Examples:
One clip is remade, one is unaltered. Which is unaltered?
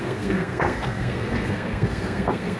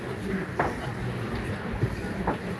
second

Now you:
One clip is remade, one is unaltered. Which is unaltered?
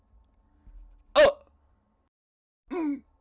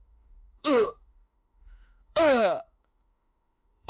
first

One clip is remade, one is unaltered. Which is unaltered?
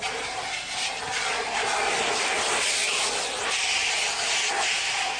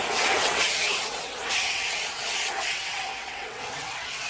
first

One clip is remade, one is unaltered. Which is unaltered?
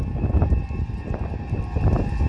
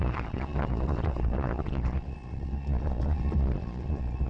first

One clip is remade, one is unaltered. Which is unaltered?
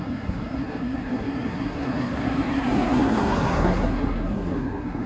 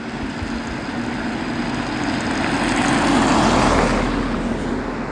second